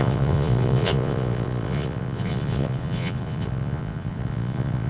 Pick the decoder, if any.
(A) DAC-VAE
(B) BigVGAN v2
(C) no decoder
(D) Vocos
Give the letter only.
D